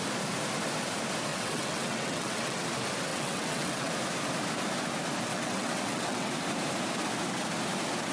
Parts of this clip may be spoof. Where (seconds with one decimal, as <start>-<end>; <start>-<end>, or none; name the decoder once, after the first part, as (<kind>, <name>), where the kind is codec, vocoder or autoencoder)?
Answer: 1.3-2.6 (vocoder, WaveNeXt); 3.1-3.9; 5.3-6.3